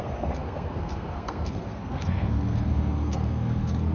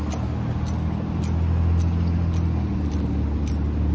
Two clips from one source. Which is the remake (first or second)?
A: first